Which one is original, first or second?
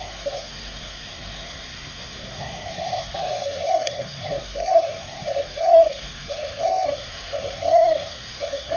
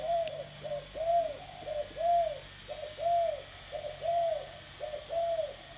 second